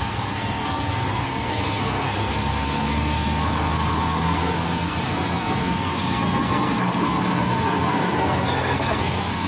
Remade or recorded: remade